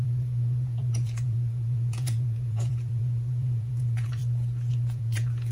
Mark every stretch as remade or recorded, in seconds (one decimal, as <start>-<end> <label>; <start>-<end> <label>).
0.0-4.2 remade; 4.2-4.7 recorded; 4.7-5.5 remade